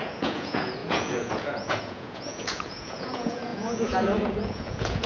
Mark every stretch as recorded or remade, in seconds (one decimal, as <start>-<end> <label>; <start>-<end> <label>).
0.0-5.1 remade